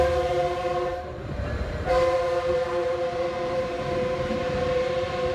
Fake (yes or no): yes